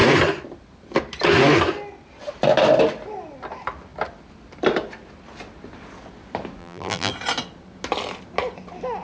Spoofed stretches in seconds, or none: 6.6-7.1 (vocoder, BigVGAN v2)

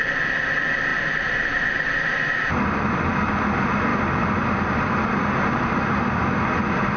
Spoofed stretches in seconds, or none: 0.9-2.0 (vocoder, BigVGAN v2); 2.5-3.3; 3.9-6.5

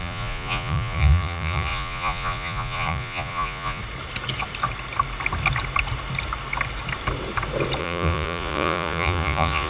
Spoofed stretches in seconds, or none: 0.0-3.8 (vocoder, Vocos); 7.8-9.7

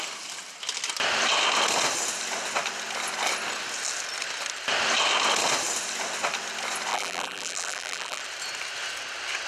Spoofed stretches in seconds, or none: 6.9-8.2 (vocoder, BigVGAN v2)

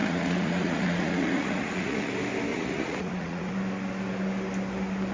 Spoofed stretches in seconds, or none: 0.0-2.1 (vocoder, Vocos); 2.5-3.5

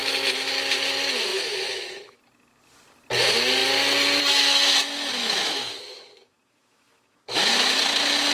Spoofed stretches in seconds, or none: 1.3-2.2 (autoencoder, DAC-VAE); 5.2-7.8

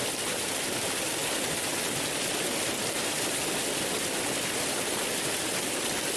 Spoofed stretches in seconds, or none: none

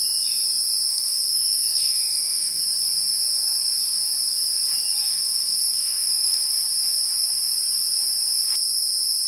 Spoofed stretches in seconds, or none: 0.9-2.6 (codec, SNAC); 5.0-6.5